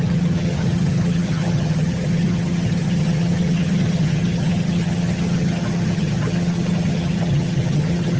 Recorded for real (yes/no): no